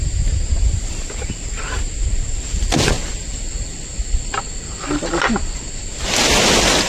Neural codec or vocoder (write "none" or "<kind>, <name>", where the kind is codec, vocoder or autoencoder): none